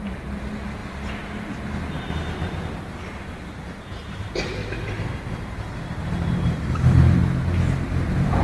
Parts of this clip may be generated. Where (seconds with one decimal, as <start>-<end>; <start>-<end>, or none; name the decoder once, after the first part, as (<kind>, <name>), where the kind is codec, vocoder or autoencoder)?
0.0-0.8 (vocoder, BigVGAN v2); 3.8-4.6; 5.8-7.2; 7.9-8.4